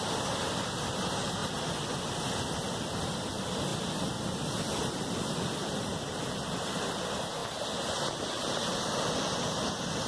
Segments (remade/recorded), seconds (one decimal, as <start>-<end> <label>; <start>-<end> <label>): 0.0-1.4 remade; 1.4-3.0 recorded; 3.0-10.1 remade